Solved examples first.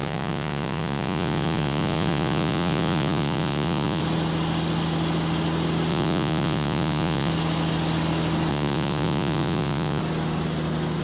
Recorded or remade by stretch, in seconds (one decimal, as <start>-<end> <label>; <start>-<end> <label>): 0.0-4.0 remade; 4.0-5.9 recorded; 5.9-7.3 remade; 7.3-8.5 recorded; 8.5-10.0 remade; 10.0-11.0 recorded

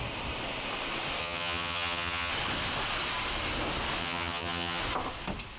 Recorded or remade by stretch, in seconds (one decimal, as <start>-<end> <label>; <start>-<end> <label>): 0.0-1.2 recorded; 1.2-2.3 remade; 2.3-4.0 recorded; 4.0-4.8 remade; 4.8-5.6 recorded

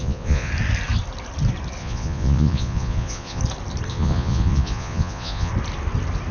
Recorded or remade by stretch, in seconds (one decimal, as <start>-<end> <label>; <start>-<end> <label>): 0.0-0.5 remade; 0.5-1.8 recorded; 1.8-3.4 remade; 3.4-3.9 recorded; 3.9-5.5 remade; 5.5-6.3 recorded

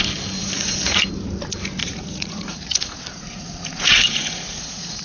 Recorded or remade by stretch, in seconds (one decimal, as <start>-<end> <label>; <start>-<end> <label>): 0.0-0.4 recorded; 0.4-1.0 remade; 1.0-1.8 recorded; 1.8-5.0 remade

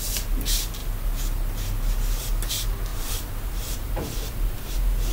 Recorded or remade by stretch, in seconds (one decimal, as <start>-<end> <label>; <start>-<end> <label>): 0.0-2.9 recorded; 2.9-3.9 remade; 3.9-5.1 recorded

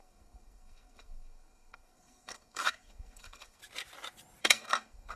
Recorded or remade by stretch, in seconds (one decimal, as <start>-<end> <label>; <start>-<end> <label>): 0.0-3.6 remade; 3.6-4.4 recorded; 4.4-5.2 remade

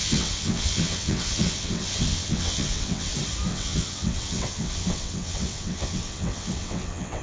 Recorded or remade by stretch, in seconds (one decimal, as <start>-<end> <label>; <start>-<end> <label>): 0.0-3.1 remade; 3.1-3.5 recorded; 3.5-7.2 remade

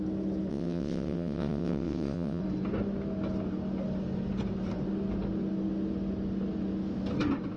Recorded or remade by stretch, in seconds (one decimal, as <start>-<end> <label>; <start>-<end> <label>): 0.0-0.5 recorded; 0.5-2.4 remade; 2.4-7.6 recorded